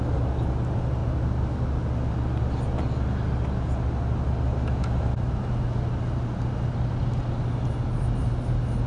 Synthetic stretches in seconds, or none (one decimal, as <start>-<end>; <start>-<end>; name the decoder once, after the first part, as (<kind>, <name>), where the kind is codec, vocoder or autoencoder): none

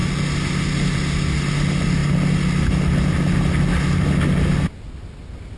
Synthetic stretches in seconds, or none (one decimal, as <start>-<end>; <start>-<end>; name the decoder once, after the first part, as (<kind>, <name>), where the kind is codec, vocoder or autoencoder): none

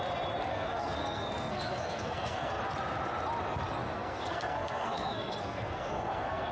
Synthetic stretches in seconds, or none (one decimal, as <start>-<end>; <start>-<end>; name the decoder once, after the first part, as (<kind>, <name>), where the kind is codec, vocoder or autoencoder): 0.5-2.6 (codec, SNAC); 3.8-6.5

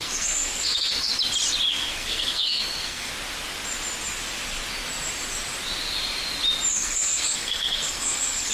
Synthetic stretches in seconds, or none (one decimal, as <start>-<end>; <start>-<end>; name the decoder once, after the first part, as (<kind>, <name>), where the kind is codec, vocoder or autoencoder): 0.0-1.1 (codec, SNAC); 1.7-3.1; 6.7-8.5

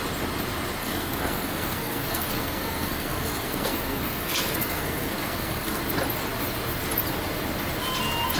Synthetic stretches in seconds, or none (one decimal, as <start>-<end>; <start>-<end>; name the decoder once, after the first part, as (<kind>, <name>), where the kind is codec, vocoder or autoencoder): 0.8-5.8 (codec, SNAC)